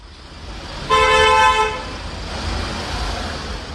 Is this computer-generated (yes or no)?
no